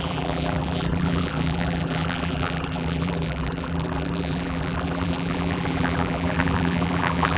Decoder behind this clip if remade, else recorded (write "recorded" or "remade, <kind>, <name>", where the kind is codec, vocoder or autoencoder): remade, vocoder, BigVGAN v2